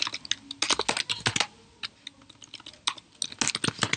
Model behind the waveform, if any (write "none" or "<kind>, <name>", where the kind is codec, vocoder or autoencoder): none